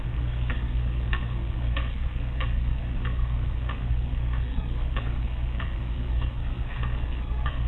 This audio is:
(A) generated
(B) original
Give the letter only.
A